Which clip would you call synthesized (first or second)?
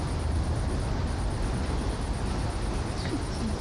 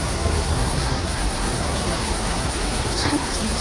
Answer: second